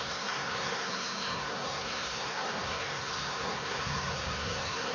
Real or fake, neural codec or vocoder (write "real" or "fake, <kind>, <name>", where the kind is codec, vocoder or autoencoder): fake, codec, SNAC